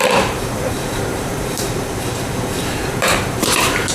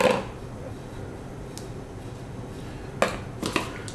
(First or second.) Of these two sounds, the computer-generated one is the first